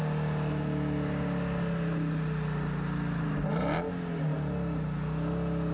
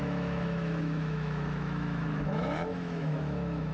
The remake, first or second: second